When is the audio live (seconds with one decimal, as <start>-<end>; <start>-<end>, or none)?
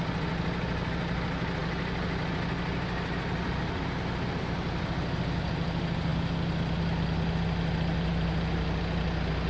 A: 0.0-9.5